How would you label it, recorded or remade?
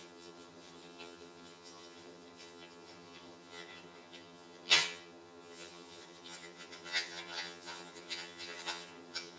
remade